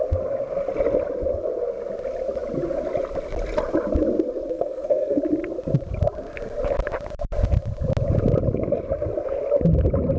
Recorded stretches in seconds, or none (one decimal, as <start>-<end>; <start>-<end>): 0.0-4.5; 5.2-10.2